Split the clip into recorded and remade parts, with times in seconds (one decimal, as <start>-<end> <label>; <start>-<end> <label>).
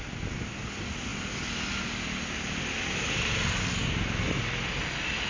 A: 0.0-5.3 recorded